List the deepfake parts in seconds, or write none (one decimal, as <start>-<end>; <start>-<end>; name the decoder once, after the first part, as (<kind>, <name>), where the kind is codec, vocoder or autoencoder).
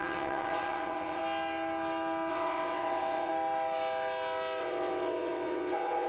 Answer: 0.0-1.2 (vocoder, WaveNeXt); 2.3-3.3; 4.6-6.1